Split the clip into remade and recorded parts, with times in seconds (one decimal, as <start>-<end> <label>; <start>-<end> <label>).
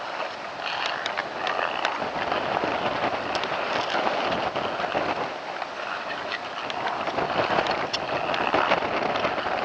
0.0-9.6 recorded